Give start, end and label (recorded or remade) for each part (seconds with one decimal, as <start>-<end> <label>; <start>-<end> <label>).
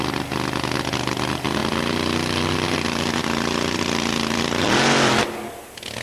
0.0-1.6 recorded; 1.6-5.2 remade; 5.2-6.0 recorded